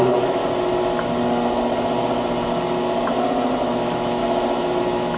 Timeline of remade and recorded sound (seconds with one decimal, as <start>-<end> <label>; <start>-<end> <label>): 0.0-0.4 remade; 0.4-3.5 recorded; 3.5-4.2 remade; 4.2-4.8 recorded; 4.8-5.2 remade